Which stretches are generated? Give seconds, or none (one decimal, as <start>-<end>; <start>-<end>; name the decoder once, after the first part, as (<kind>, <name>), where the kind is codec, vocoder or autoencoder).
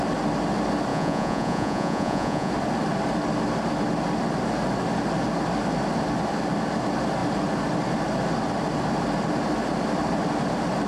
0.9-2.5 (vocoder, Vocos)